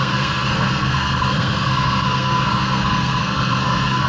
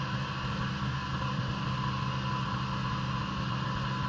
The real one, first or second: second